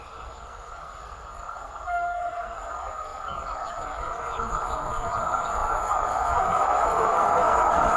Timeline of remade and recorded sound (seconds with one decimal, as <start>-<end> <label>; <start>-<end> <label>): 0.0-8.0 remade